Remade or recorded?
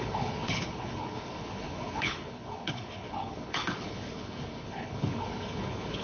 remade